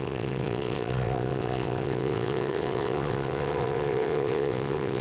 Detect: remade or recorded remade